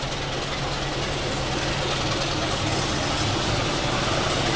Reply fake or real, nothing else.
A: real